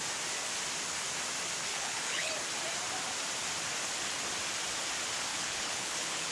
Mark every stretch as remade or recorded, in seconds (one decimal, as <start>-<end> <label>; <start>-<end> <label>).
0.0-1.7 recorded; 1.7-2.3 remade; 2.3-5.3 recorded; 5.3-6.3 remade

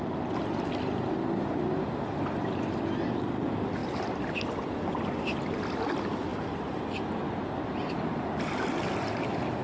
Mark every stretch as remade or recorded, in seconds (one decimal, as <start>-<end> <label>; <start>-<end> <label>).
0.0-9.6 recorded

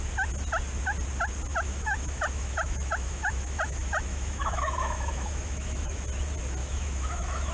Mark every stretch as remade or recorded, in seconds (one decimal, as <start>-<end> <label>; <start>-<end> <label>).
0.0-1.5 recorded; 1.5-6.0 remade; 6.0-6.6 recorded; 6.6-7.5 remade